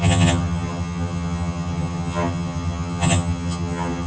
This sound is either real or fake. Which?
fake